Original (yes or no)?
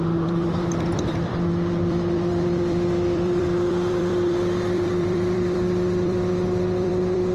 no